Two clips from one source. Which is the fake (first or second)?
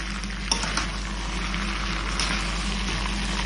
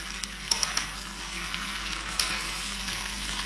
second